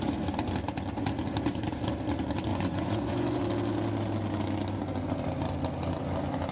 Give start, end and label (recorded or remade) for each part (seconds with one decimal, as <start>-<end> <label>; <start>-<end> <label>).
0.0-2.5 recorded; 2.5-3.4 remade; 3.4-6.5 recorded